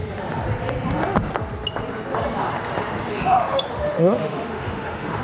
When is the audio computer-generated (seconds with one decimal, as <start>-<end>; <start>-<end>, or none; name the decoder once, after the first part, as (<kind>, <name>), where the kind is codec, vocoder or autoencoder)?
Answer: 3.1-5.2 (autoencoder, DAC-VAE)